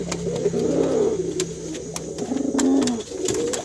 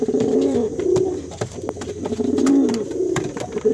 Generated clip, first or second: second